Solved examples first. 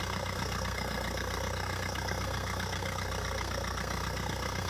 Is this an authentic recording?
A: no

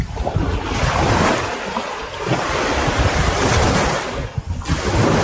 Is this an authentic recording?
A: yes